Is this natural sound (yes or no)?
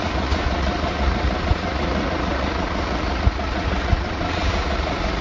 no